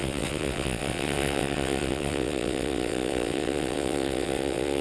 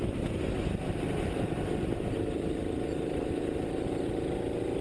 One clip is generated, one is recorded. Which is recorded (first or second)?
second